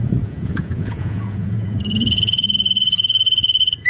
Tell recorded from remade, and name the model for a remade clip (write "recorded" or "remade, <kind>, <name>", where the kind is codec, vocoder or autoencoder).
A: remade, vocoder, Vocos